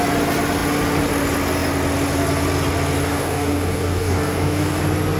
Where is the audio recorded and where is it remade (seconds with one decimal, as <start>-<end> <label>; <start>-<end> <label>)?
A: 0.0-3.1 recorded; 3.1-4.8 remade; 4.8-5.2 recorded